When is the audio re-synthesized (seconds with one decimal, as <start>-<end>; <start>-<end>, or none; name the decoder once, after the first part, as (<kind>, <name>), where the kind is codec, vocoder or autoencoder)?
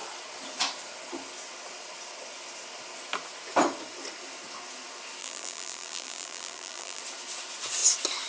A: 5.2-7.0 (vocoder, BigVGAN v2)